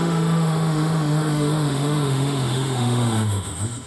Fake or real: fake